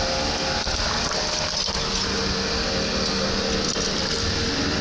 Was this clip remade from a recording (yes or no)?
no